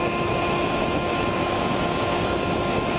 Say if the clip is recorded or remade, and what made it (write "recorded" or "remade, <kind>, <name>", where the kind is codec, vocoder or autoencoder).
remade, autoencoder, DAC-VAE